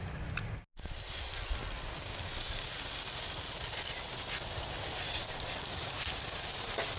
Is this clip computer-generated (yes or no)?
no